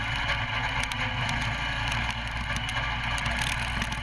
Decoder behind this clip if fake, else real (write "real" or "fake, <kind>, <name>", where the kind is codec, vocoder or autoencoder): real